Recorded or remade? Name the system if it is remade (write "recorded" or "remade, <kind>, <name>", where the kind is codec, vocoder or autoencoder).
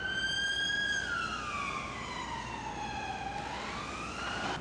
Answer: recorded